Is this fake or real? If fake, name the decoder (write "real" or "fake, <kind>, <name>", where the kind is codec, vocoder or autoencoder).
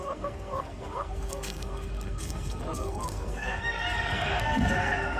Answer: fake, codec, SNAC